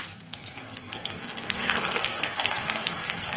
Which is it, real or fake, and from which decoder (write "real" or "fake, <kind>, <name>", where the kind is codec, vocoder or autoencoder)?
fake, codec, SNAC